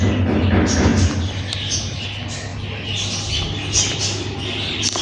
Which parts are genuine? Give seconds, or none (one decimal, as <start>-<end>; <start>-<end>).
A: 0.0-5.0

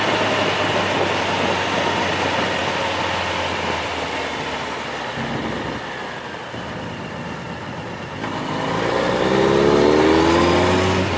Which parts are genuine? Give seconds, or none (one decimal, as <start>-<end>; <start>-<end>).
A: 0.0-11.2

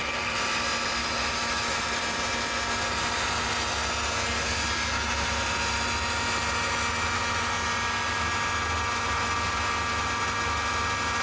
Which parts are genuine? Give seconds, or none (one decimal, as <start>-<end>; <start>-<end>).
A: 0.0-1.0; 1.8-11.2

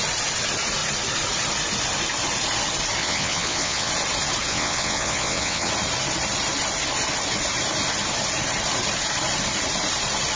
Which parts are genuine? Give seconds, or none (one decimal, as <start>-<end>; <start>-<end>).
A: 0.0-3.0; 3.9-4.5; 5.7-10.4

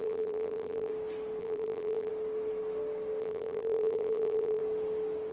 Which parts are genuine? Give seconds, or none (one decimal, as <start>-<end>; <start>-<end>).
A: 0.9-1.4; 2.1-3.2; 4.6-5.3

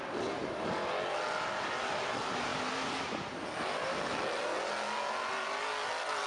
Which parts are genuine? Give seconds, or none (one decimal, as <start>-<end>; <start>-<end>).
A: 0.0-6.3

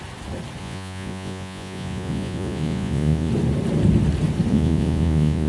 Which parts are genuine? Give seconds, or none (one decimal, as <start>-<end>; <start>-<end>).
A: 0.0-0.6; 3.3-4.5